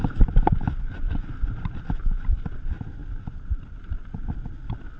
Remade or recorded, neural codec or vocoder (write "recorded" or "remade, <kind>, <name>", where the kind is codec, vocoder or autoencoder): recorded